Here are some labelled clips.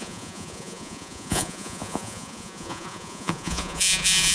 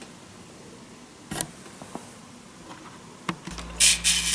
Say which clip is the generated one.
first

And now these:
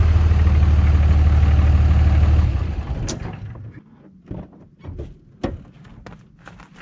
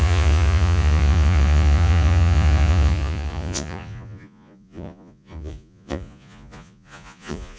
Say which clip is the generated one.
second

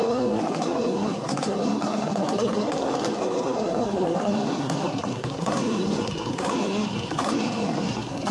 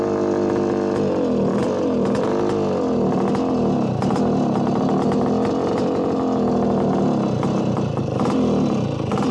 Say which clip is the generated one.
first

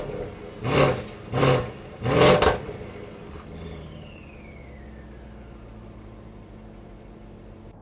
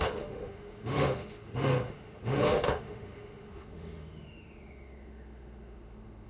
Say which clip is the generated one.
second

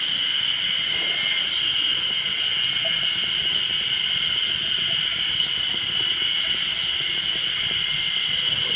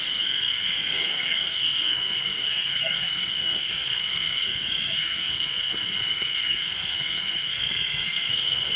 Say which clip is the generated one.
second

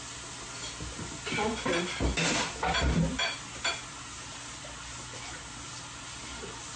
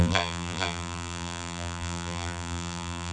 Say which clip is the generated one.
second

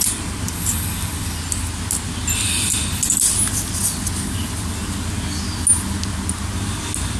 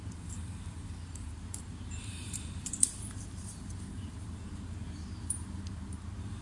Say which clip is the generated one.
second